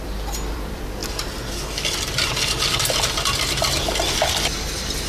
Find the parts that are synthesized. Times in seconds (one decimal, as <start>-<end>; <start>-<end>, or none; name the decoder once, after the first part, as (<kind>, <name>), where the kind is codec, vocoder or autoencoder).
0.0-1.0 (vocoder, BigVGAN v2); 4.1-5.1